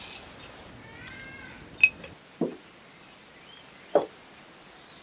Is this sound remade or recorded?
recorded